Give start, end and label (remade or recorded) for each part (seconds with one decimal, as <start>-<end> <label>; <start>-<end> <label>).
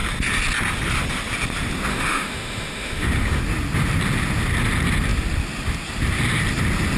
0.0-1.9 recorded; 1.9-3.4 remade; 3.4-7.0 recorded